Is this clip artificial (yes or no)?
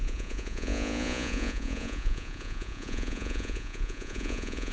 yes